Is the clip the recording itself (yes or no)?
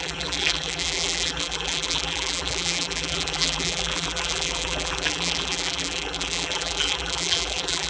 no